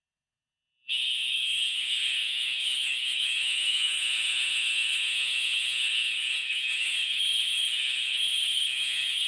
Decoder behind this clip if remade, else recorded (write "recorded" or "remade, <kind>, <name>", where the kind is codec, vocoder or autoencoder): remade, codec, HILCodec